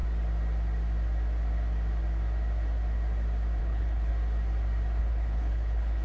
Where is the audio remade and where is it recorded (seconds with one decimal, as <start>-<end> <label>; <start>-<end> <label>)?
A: 0.0-3.6 recorded; 3.6-4.1 remade; 4.1-5.0 recorded; 5.0-6.0 remade